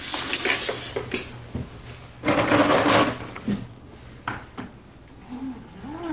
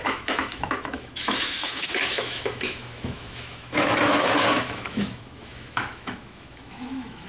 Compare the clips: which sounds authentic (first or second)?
first